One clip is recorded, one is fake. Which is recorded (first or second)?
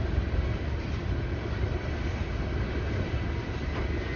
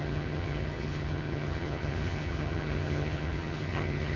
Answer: first